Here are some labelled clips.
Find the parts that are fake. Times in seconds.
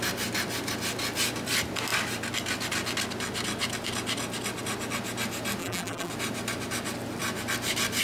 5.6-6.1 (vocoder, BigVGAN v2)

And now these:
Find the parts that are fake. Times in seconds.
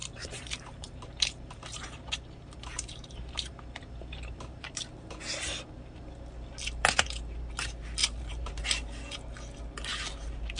0.0-5.2 (vocoder, BigVGAN v2); 8.0-8.6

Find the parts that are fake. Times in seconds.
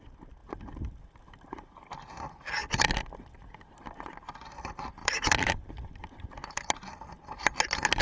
5.0-6.0 (vocoder, BigVGAN v2)